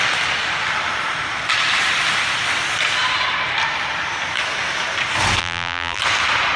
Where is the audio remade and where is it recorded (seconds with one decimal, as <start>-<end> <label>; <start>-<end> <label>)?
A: 0.0-5.4 recorded; 5.4-6.0 remade; 6.0-6.6 recorded